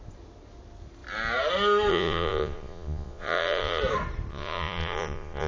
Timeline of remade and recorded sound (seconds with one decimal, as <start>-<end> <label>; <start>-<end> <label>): 0.0-1.9 recorded; 1.9-3.8 remade; 3.8-4.3 recorded; 4.3-5.5 remade

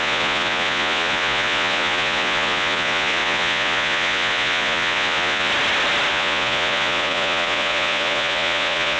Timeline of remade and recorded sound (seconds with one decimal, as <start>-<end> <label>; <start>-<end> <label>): 0.0-5.5 remade; 5.5-6.1 recorded; 6.1-9.0 remade

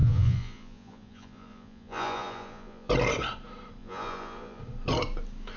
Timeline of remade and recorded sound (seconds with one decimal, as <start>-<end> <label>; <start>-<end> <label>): 0.0-2.9 remade; 2.9-3.8 recorded; 3.8-4.6 remade; 4.6-5.6 recorded

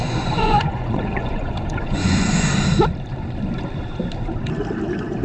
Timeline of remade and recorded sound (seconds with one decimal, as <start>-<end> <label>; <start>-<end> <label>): 0.0-2.5 remade; 2.5-5.2 recorded

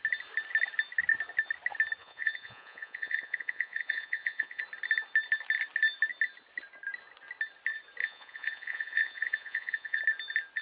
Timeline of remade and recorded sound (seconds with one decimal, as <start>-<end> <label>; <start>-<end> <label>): 0.0-2.0 recorded; 2.0-4.6 remade; 4.6-8.0 recorded; 8.0-10.0 remade; 10.0-10.6 recorded

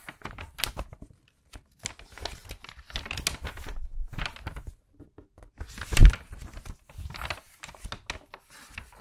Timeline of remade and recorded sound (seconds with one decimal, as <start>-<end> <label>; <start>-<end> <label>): 0.0-9.0 recorded